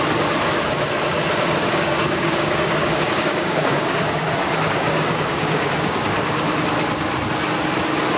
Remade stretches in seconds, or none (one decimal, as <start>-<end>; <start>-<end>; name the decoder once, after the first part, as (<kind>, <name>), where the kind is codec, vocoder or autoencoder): 1.6-6.5 (codec, DAC)